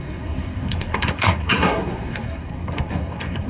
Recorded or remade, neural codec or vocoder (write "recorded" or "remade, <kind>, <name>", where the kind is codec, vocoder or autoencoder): remade, codec, SNAC